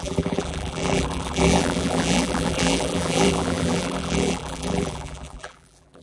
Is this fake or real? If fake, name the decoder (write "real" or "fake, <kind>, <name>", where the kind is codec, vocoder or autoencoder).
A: fake, vocoder, BigVGAN v2